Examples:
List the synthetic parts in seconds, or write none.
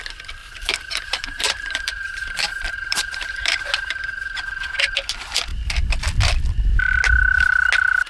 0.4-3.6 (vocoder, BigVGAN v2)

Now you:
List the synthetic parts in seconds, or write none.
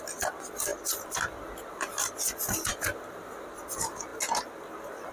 none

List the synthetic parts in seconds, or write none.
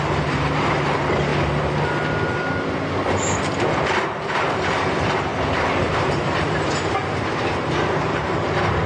0.0-1.3 (vocoder, BigVGAN v2); 3.6-5.3; 5.8-7.0; 7.6-8.9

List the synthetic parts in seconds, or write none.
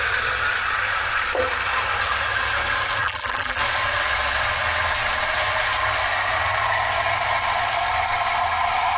3.0-3.6 (vocoder, BigVGAN v2)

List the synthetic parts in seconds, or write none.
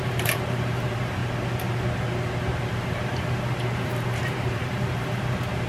0.0-1.2 (vocoder, BigVGAN v2); 2.7-5.7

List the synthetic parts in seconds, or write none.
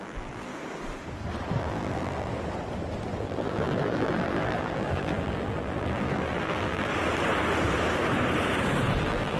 0.0-0.5 (vocoder, BigVGAN v2); 1.6-2.3; 3.2-6.9; 9.0-9.4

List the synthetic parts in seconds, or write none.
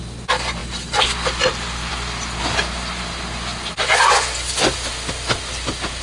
none